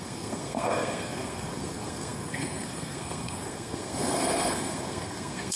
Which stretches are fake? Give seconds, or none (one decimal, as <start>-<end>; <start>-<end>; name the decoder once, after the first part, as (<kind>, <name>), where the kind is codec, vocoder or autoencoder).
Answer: 0.0-5.6 (codec, SNAC)